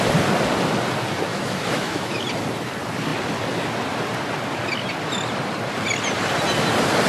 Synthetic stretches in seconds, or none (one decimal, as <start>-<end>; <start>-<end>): 1.3-2.2